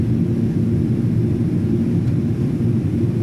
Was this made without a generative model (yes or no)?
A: yes